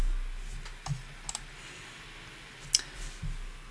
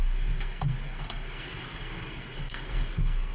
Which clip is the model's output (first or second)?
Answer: second